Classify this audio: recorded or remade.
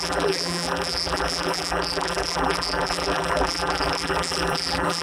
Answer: remade